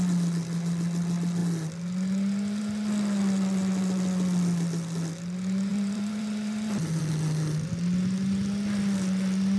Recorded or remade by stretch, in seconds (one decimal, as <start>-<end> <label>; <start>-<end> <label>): 0.0-5.7 recorded; 5.7-7.0 remade; 7.0-9.6 recorded